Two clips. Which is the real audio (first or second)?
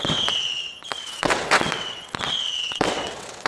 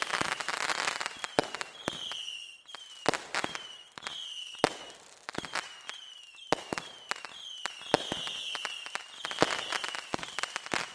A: second